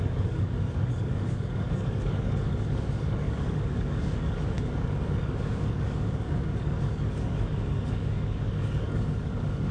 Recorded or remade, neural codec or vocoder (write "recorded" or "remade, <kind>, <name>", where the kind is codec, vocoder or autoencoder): remade, codec, DAC